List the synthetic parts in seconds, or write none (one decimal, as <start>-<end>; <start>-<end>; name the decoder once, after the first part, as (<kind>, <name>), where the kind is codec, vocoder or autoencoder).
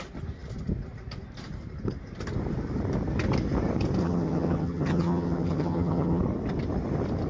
4.0-6.2 (vocoder, HiFi-GAN)